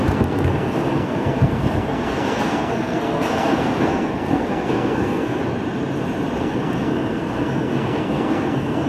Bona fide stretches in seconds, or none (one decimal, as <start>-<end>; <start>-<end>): 5.4-6.4

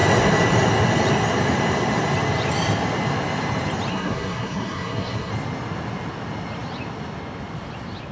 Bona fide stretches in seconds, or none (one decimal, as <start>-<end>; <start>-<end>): 0.0-3.9; 5.3-8.1

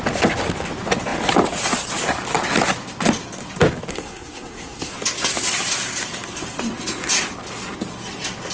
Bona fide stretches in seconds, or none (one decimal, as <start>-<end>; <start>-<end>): 0.0-3.9; 4.9-8.5

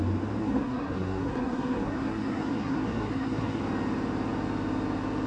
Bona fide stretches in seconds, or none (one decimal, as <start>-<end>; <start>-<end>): 0.0-0.4; 3.6-5.3

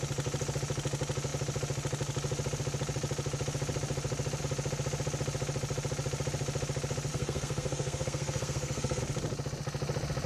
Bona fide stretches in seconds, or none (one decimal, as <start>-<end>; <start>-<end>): 0.0-7.1; 9.0-10.3

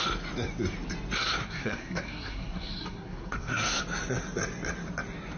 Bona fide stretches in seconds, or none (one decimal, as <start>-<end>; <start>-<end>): 0.0-1.4; 3.8-5.4

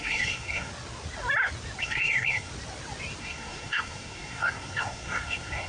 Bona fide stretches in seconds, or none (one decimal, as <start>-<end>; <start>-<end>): 0.7-1.8; 2.5-3.2